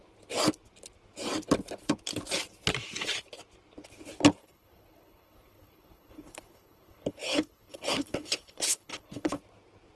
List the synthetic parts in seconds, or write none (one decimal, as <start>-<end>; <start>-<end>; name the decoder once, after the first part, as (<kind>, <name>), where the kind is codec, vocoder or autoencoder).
4.4-9.4 (codec, HILCodec)